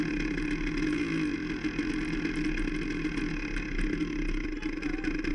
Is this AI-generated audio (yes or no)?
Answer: no